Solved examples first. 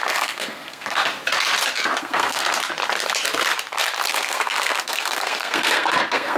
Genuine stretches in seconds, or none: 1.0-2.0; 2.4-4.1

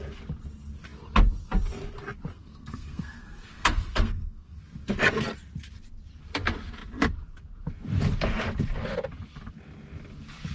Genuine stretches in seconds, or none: 0.0-2.3; 4.6-10.5